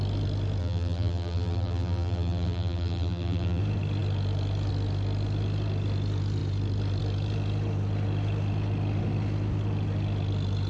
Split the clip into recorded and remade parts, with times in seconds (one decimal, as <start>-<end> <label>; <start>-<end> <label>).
0.0-0.6 recorded; 0.6-3.6 remade; 3.6-10.7 recorded